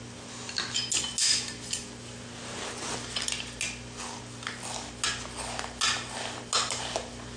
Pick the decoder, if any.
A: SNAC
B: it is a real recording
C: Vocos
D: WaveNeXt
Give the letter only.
B